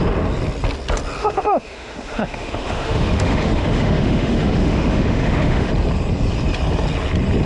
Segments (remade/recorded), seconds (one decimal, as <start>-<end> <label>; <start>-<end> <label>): 0.0-1.2 recorded; 1.2-5.7 remade; 5.7-7.5 recorded

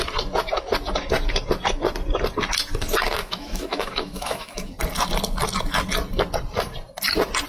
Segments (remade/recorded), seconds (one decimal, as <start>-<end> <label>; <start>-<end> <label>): 0.0-3.2 recorded; 3.2-4.7 remade; 4.7-7.5 recorded

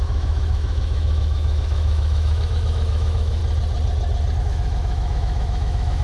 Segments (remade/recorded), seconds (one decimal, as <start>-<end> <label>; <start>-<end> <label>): 0.0-3.4 remade; 3.4-4.4 recorded; 4.4-6.0 remade

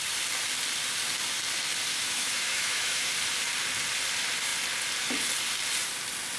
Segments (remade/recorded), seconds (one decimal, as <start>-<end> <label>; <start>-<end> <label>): 0.0-1.9 recorded; 1.9-3.1 remade; 3.1-6.4 recorded

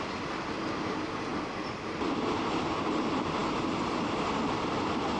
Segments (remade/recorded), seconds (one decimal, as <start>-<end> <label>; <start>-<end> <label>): 0.0-5.2 recorded

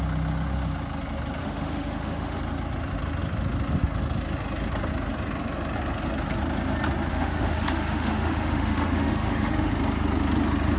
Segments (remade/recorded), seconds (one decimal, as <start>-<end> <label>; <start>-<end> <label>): 0.0-1.4 recorded; 1.4-2.4 remade; 2.4-7.1 recorded; 7.1-9.7 remade; 9.7-10.8 recorded

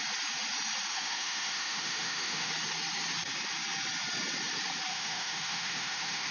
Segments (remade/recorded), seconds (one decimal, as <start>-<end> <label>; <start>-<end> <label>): 0.0-0.9 recorded; 0.9-2.5 remade; 2.5-4.9 recorded; 4.9-6.3 remade